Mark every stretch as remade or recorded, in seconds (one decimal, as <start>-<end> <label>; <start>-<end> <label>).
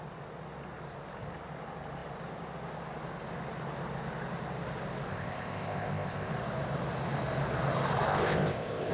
0.0-5.1 recorded; 5.1-6.3 remade; 6.3-8.1 recorded; 8.1-8.9 remade